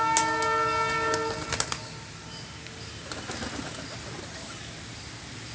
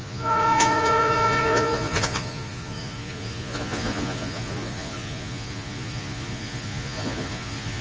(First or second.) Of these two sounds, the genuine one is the first